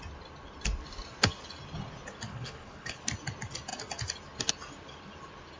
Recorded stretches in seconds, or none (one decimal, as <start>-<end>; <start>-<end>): 0.0-2.3; 3.0-5.6